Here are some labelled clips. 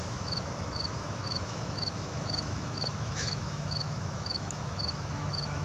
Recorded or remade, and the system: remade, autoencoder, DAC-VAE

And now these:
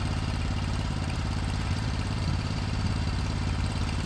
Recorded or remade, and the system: remade, vocoder, BigVGAN v2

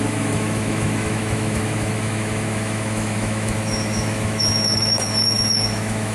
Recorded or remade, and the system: remade, autoencoder, DAC-VAE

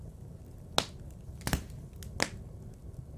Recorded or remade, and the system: recorded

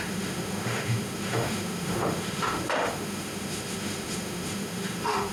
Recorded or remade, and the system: remade, autoencoder, DAC-VAE